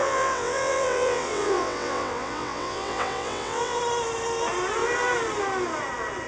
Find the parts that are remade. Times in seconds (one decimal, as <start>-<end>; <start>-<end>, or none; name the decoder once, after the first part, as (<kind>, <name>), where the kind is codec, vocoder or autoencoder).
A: 0.0-3.8 (vocoder, WaveNeXt)